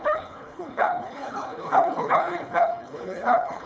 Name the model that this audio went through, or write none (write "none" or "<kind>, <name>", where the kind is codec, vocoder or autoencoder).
codec, HILCodec